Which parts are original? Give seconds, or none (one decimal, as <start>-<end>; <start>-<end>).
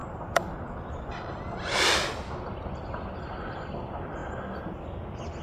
0.0-5.4